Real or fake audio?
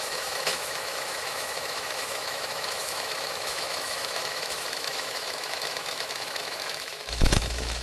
fake